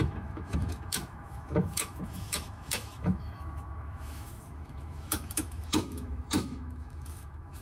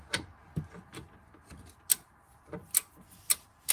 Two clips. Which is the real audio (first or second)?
second